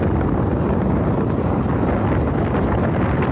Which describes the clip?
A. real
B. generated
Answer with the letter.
A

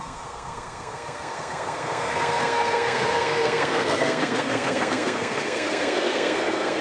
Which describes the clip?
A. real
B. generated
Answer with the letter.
B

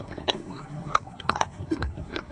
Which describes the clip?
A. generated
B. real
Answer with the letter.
A